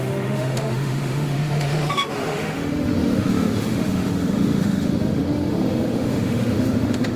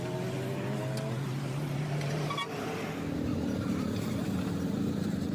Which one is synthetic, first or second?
first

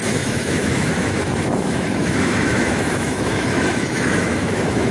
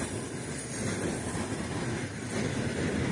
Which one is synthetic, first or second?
first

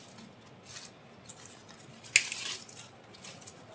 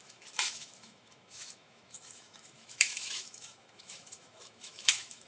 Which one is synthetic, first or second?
second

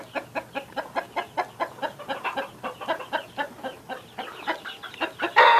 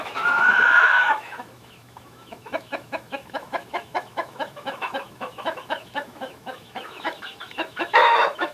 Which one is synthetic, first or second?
second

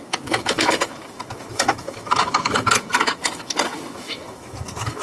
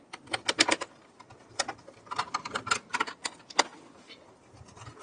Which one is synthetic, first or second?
first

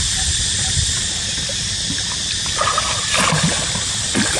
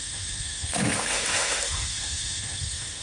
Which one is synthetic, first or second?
second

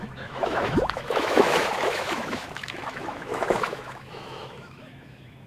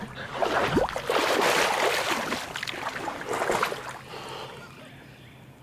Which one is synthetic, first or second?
first